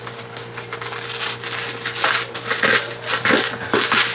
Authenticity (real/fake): real